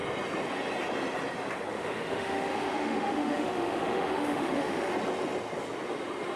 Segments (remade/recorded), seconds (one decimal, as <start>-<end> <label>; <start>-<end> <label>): 0.0-1.7 recorded; 1.7-4.9 remade; 4.9-6.4 recorded